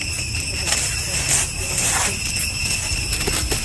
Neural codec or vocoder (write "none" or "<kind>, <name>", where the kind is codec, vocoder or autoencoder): none